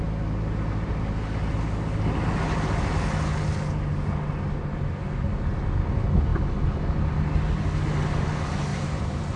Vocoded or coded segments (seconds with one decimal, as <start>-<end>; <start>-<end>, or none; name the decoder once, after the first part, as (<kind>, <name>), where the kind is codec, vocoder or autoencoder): 8.7-9.4 (vocoder, BigVGAN v2)